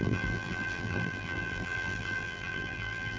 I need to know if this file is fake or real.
fake